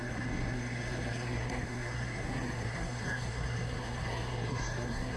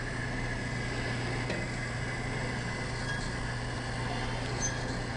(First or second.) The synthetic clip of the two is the first